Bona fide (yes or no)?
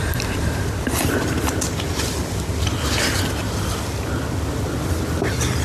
yes